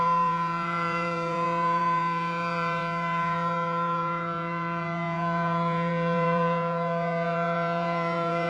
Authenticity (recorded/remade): remade